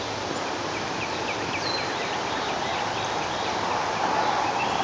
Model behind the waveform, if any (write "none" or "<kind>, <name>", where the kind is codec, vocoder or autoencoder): vocoder, BigVGAN v2